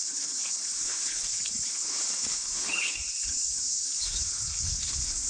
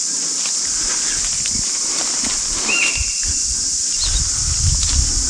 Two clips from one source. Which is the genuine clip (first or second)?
second